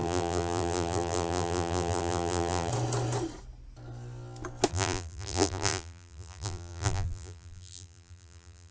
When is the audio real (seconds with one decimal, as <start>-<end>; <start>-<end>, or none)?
2.7-4.7